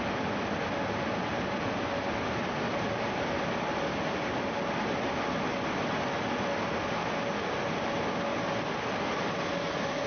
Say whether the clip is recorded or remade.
recorded